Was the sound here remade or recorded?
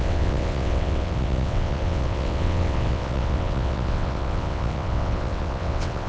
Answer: remade